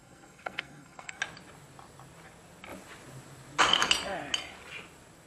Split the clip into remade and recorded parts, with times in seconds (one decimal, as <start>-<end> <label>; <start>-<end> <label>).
0.0-1.2 remade; 1.2-5.3 recorded